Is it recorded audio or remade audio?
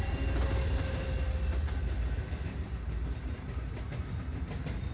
recorded